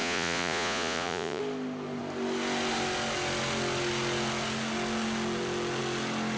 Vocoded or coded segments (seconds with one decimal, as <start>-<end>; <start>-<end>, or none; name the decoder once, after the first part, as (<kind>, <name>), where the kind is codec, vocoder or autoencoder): 0.0-1.4 (vocoder, Vocos)